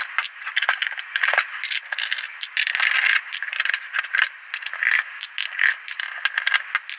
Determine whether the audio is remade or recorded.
recorded